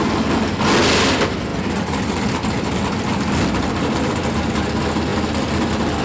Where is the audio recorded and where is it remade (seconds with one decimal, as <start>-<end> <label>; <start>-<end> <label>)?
0.0-6.0 recorded